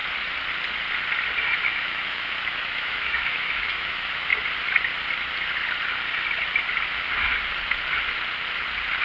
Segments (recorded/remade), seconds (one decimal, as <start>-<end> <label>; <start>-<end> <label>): 0.0-1.6 recorded; 1.6-4.3 remade; 4.3-9.0 recorded

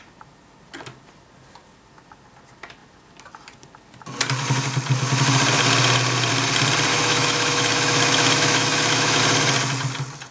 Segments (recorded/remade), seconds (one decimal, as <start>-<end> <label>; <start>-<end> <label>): 0.0-6.9 recorded; 6.9-9.2 remade; 9.2-10.3 recorded

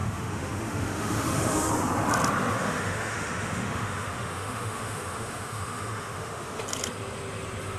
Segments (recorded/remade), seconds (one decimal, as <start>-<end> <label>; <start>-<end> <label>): 0.0-1.7 remade; 1.7-2.5 recorded; 2.5-6.6 remade; 6.6-7.8 recorded

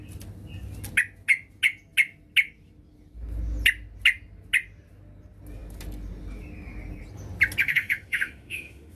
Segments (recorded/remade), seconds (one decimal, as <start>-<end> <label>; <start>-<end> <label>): 0.0-7.6 recorded; 7.6-9.0 remade

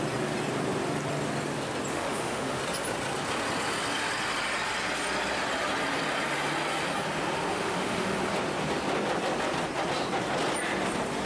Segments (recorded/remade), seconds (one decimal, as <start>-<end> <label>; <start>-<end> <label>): 0.0-1.9 recorded; 1.9-2.6 remade; 2.6-7.5 recorded; 7.5-8.1 remade; 8.1-11.3 recorded